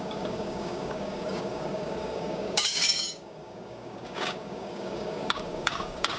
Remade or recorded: remade